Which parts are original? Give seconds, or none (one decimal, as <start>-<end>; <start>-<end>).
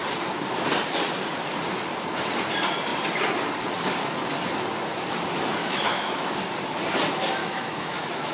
0.0-5.6; 6.3-7.4